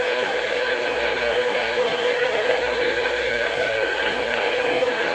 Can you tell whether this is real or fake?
fake